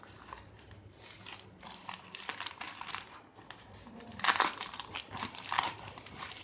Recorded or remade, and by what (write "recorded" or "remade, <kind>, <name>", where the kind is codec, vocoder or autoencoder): remade, vocoder, BigVGAN v2